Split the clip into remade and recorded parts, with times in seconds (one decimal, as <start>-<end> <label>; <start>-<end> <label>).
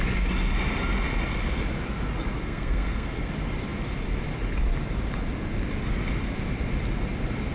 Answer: 0.0-2.4 recorded; 2.4-3.3 remade; 3.3-7.5 recorded